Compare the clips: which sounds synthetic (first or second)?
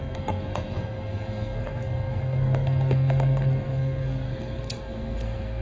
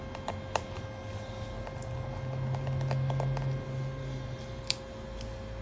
first